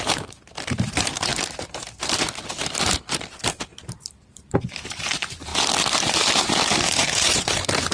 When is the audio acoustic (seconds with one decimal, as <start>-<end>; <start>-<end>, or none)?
1.3-3.9; 5.5-6.4